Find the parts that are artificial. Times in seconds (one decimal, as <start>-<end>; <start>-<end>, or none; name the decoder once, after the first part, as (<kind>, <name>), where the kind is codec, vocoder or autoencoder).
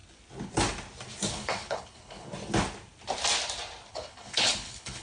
1.3-2.3 (codec, HILCodec); 3.9-5.0